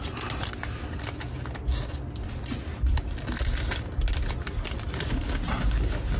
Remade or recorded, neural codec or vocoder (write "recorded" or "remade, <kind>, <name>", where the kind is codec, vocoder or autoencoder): recorded